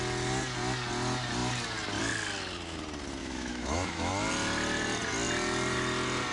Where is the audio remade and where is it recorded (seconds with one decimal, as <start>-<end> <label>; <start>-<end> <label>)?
0.0-3.2 recorded; 3.2-4.1 remade; 4.1-6.3 recorded